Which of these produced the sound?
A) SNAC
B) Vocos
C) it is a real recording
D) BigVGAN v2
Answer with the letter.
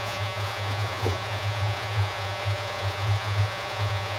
B